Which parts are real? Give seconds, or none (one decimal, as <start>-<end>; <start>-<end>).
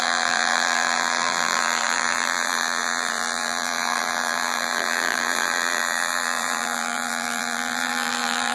none